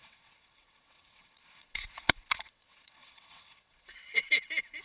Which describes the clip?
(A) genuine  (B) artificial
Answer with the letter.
B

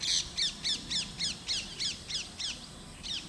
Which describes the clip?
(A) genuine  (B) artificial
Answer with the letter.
A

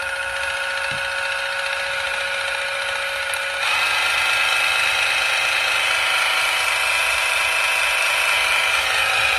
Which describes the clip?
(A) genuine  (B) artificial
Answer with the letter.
A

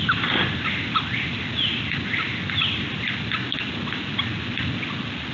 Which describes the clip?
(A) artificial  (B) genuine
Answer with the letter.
B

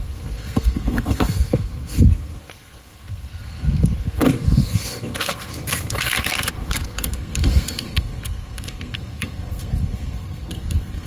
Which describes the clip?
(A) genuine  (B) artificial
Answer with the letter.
B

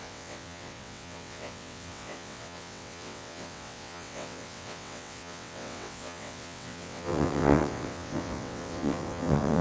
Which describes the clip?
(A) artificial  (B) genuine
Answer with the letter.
A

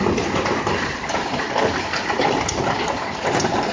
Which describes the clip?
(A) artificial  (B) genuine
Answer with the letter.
B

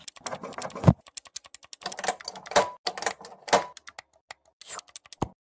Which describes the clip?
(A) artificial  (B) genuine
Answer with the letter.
B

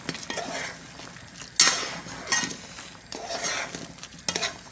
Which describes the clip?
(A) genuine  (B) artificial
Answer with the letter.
A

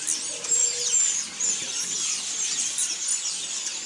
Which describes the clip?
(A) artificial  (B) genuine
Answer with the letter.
B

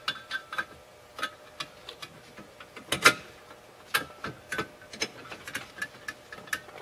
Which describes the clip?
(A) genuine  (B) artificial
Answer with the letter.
A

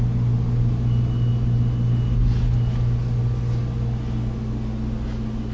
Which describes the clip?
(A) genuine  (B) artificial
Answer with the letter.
A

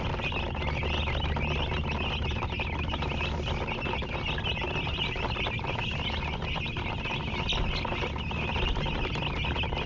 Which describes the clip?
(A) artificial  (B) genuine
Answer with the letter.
B